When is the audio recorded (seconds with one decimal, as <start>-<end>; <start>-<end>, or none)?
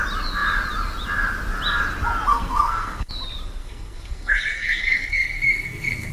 0.0-2.3; 3.1-3.6